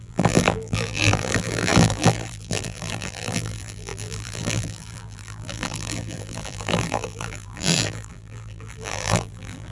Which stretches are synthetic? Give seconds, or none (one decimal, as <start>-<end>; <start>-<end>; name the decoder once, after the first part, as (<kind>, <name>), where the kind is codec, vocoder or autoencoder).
0.0-9.7 (vocoder, BigVGAN v2)